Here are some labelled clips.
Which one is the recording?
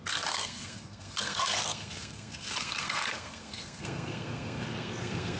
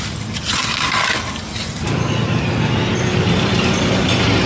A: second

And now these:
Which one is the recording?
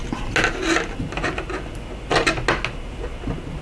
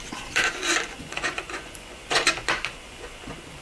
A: first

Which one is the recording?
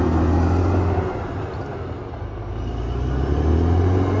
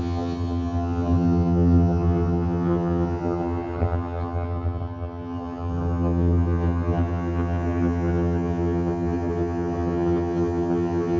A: first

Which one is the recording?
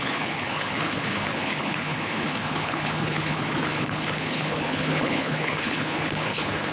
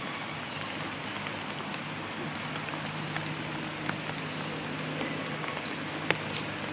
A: second